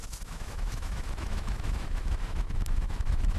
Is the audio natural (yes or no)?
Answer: no